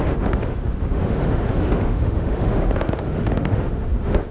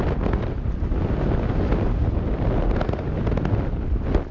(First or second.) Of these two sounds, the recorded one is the second